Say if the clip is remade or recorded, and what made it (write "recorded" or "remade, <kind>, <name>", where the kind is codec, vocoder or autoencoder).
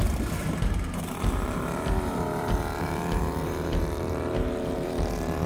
remade, vocoder, BigVGAN v2